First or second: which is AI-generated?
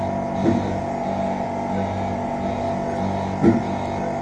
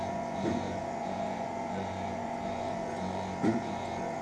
second